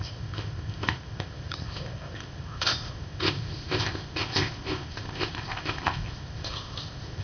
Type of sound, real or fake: fake